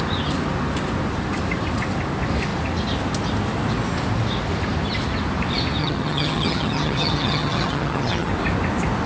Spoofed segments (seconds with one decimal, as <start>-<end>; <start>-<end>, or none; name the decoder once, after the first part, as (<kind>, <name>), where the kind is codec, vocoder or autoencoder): 5.8-8.3 (vocoder, HiFi-GAN)